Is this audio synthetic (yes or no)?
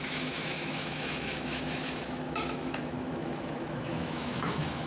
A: yes